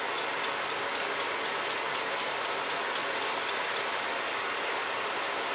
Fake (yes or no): no